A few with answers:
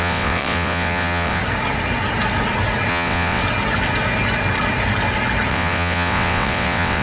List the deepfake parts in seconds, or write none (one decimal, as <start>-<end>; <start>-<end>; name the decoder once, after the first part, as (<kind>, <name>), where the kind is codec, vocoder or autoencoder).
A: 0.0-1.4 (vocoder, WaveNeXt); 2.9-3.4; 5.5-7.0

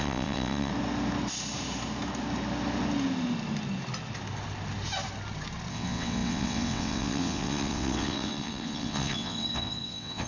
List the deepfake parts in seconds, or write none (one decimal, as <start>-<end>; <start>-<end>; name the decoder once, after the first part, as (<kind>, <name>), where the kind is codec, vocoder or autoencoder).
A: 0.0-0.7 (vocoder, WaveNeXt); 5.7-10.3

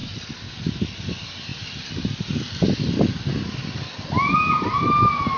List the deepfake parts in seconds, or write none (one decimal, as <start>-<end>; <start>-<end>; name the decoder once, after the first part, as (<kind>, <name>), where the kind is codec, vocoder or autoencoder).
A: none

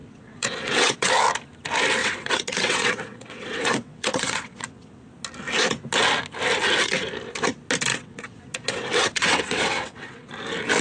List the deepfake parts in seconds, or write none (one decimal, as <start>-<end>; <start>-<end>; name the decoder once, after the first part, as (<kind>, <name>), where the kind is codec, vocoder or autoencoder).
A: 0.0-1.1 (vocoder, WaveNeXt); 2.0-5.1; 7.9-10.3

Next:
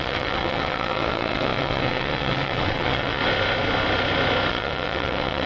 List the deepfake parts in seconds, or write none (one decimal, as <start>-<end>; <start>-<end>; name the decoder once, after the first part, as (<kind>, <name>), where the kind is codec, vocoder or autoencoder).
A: 0.0-3.2 (vocoder, WaveNeXt); 4.5-5.5